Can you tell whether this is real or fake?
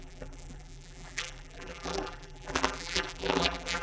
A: fake